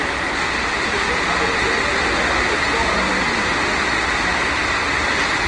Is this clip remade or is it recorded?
recorded